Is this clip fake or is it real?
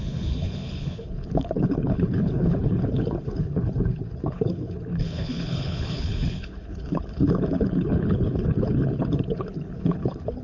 fake